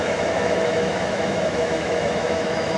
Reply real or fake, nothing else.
fake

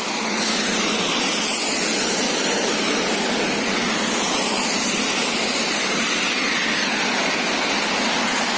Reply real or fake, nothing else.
real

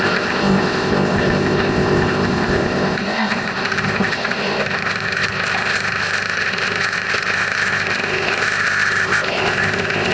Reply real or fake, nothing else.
fake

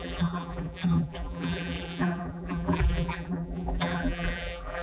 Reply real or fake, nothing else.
fake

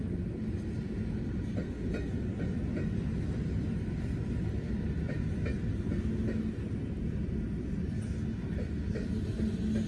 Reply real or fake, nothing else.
real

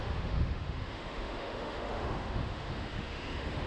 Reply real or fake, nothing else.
fake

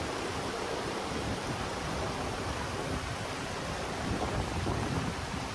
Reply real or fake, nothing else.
fake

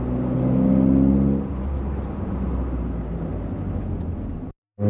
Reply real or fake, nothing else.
real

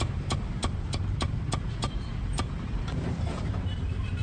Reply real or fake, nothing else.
fake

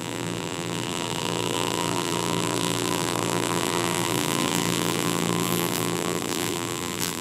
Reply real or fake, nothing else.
fake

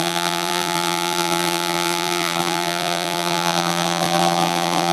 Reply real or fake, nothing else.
fake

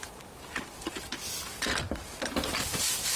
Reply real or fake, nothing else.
real